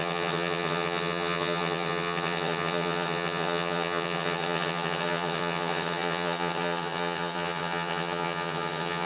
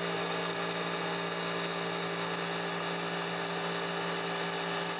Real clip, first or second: second